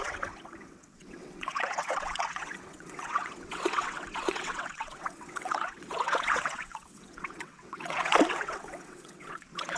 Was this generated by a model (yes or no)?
yes